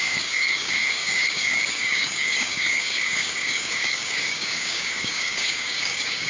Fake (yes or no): yes